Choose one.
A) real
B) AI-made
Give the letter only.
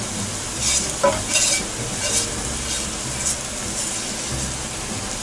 A